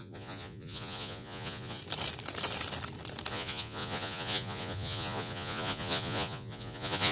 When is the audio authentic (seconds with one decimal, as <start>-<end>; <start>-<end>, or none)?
1.8-3.3